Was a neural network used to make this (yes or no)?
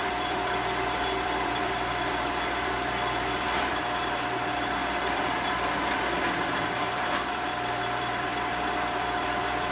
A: yes